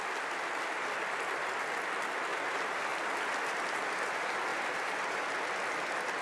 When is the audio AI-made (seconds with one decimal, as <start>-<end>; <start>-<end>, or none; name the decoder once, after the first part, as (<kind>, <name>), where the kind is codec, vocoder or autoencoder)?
4.5-5.4 (vocoder, BigVGAN v2)